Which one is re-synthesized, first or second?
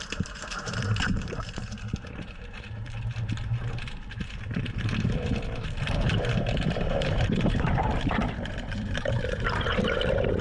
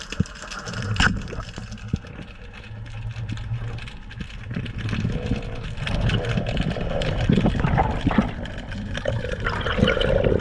first